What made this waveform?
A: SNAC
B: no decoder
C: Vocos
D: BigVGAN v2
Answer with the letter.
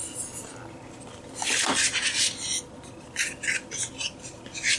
B